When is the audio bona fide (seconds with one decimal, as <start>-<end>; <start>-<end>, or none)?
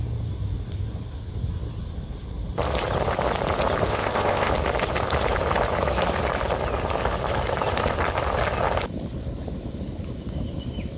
0.0-3.9; 4.5-11.0